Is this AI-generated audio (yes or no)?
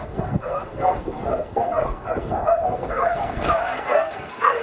yes